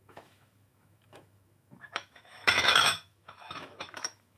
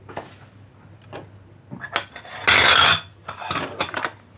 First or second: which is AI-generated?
first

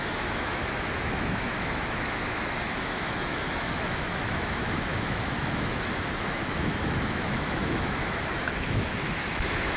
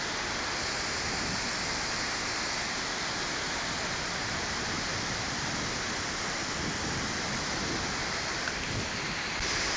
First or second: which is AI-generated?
first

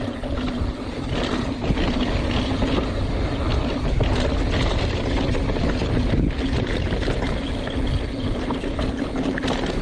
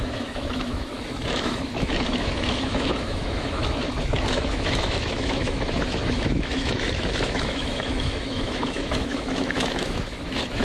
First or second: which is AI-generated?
second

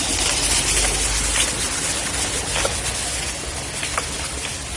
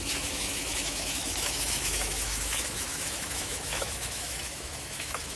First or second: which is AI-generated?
second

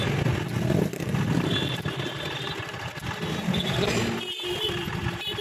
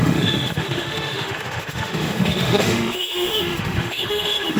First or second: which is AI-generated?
second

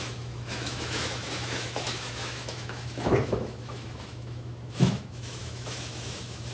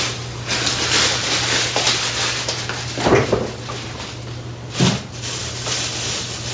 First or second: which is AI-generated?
first